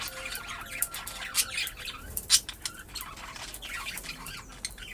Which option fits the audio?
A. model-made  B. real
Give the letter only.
B